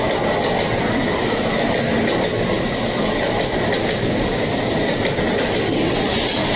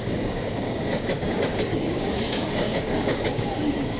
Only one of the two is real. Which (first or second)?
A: first